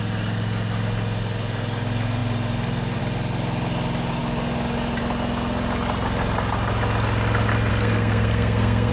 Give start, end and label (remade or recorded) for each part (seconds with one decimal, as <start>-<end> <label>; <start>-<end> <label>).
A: 0.0-7.7 recorded; 7.7-8.9 remade